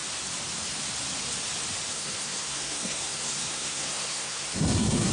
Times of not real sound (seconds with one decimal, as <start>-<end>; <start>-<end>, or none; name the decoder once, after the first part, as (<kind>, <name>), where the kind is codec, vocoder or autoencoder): 1.9-5.1 (codec, SNAC)